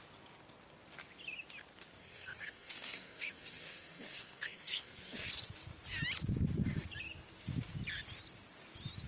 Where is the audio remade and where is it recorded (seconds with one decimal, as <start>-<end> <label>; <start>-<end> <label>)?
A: 0.0-2.0 recorded; 2.0-5.3 remade; 5.3-9.1 recorded